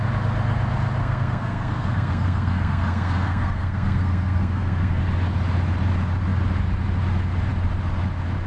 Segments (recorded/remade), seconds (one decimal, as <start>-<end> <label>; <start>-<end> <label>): 0.0-1.0 recorded; 1.0-5.0 remade; 5.0-8.5 recorded